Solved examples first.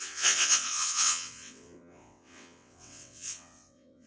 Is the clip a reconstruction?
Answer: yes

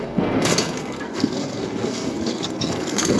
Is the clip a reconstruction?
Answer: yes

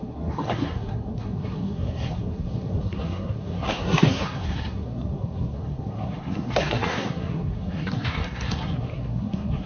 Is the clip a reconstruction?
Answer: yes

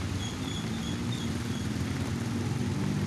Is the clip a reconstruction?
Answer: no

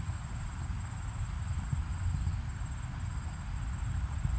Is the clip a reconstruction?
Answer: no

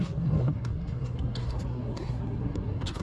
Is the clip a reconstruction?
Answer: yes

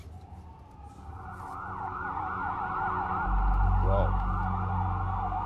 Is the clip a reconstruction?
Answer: no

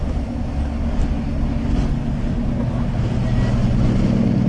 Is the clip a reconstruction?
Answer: no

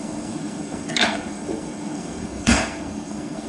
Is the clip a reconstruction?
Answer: yes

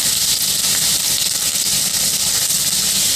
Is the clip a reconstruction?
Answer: no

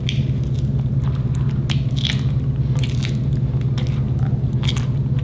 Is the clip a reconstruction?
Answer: no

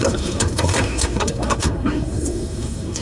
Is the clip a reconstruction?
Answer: yes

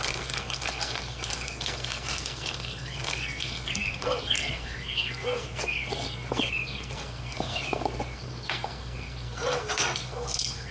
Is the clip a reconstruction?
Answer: yes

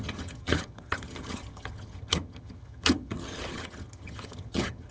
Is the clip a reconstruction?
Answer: yes